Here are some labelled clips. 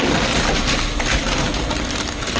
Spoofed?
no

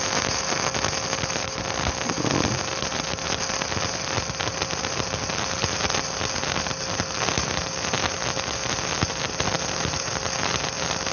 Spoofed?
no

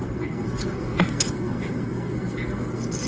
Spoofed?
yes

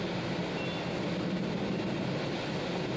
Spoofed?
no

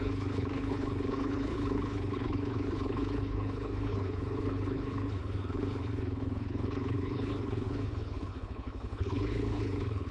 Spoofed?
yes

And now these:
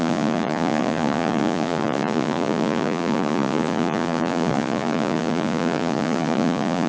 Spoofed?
yes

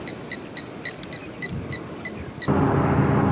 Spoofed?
no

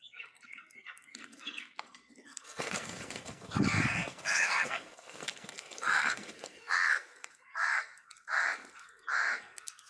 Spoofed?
yes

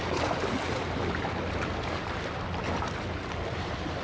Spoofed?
no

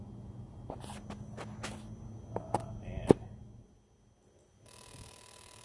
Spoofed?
no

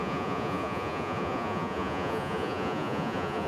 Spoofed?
yes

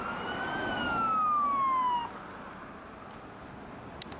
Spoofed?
no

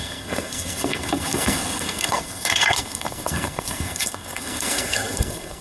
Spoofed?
yes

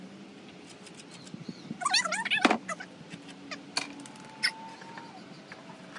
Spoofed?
no